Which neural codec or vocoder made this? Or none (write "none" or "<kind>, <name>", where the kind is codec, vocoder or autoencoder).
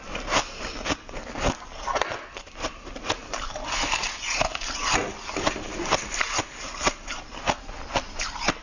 none